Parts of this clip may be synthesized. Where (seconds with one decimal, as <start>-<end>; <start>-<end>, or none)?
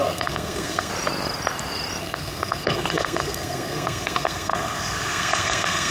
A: 0.0-0.9; 2.0-5.9